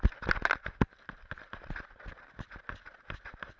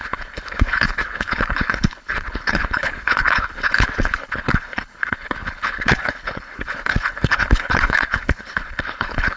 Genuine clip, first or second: first